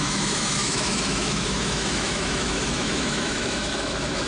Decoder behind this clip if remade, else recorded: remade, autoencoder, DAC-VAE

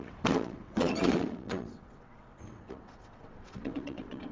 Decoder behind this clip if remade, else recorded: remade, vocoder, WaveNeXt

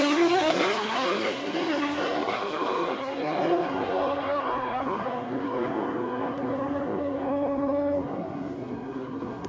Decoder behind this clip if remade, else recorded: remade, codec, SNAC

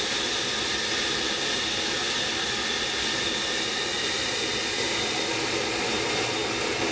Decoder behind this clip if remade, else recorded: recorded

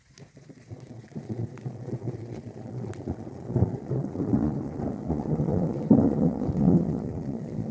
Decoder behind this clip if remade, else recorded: remade, vocoder, Vocos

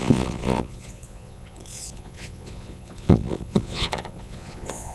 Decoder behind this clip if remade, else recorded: remade, vocoder, Vocos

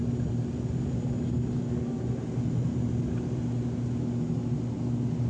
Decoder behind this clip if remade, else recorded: recorded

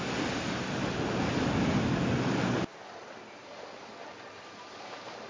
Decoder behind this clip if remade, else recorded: recorded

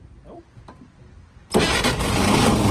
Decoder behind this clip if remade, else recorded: recorded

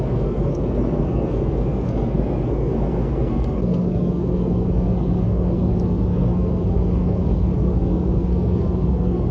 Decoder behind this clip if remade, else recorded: remade, codec, SNAC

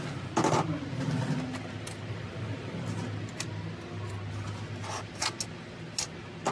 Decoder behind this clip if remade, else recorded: recorded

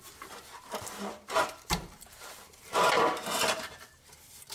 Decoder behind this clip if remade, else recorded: remade, vocoder, BigVGAN v2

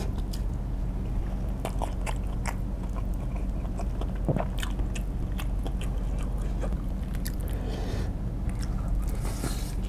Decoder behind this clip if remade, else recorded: recorded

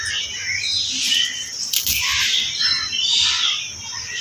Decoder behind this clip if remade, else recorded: recorded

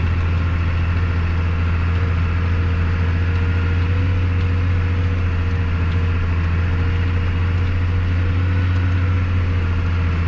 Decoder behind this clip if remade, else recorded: recorded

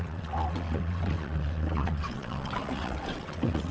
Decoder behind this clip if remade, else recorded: remade, vocoder, WaveNeXt